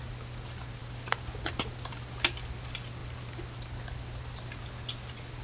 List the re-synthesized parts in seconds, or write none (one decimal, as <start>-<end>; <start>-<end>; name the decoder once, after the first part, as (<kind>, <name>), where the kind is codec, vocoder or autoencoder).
none